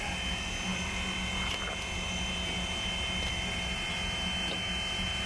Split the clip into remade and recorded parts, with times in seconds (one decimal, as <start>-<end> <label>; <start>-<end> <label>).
0.0-5.3 recorded